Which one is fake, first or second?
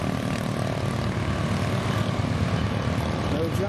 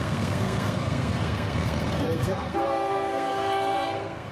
second